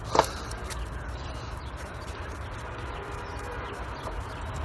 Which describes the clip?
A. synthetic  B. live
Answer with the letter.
A